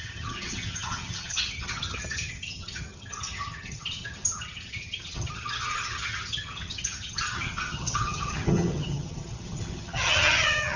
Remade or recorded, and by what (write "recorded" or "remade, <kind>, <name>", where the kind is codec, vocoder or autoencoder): remade, vocoder, HiFi-GAN